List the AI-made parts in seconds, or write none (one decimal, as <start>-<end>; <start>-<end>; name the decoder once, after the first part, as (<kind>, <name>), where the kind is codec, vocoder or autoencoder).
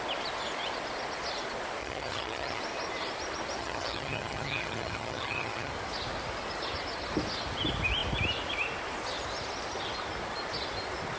1.8-2.6 (vocoder, HiFi-GAN); 3.6-5.7